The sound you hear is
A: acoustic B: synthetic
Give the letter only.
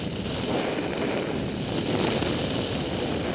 A